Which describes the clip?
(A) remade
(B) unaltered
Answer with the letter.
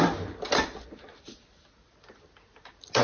B